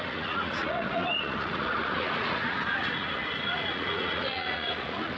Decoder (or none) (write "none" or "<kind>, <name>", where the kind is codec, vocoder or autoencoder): vocoder, Vocos